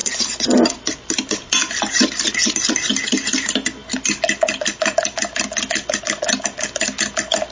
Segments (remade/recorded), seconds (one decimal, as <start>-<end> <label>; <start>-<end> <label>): 0.0-7.5 recorded